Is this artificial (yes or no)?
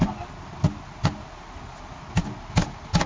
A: no